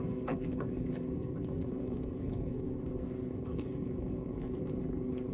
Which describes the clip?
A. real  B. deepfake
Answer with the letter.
B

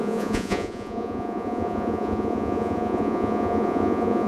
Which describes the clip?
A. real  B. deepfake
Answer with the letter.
B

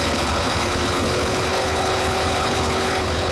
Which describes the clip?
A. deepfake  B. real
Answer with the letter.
A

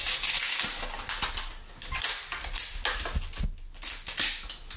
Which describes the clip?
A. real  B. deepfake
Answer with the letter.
A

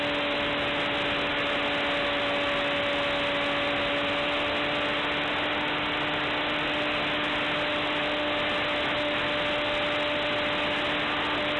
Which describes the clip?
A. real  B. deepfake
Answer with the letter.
A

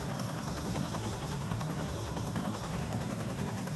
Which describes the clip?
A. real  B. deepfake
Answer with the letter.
B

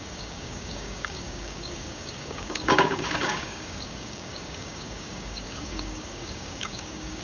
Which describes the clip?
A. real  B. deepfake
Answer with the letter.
B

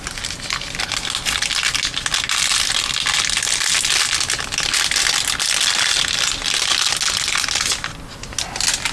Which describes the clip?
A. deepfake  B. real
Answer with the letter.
B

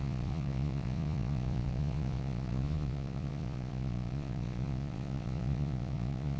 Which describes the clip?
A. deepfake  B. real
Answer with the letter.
A